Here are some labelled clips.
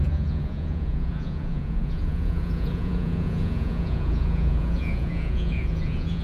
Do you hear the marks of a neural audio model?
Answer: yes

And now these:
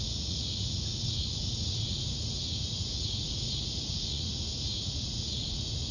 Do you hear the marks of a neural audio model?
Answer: yes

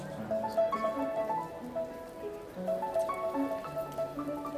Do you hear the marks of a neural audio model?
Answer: yes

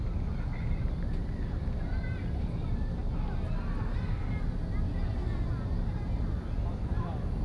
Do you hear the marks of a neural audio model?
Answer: no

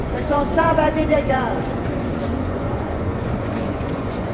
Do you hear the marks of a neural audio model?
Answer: yes